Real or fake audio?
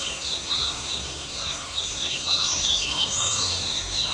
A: fake